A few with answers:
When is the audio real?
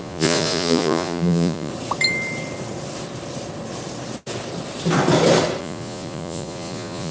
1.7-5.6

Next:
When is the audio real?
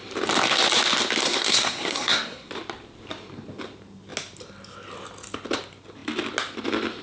0.0-1.2; 2.5-7.0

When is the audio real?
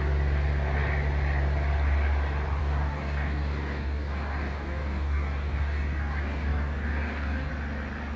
0.0-2.6; 7.5-8.2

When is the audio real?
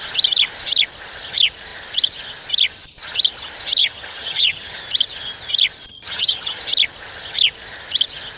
0.0-3.8; 4.8-5.9; 6.6-8.4